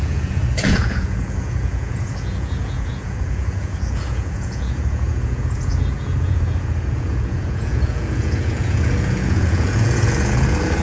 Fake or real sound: fake